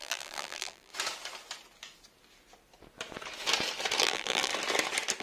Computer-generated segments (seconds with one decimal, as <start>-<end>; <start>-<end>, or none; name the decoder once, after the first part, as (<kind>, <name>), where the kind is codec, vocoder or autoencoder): 0.0-0.9 (vocoder, BigVGAN v2); 4.0-4.5